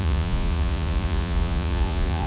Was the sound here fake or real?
fake